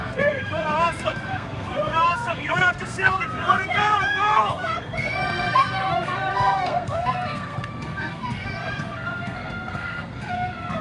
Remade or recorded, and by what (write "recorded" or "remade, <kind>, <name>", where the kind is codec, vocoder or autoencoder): remade, codec, SNAC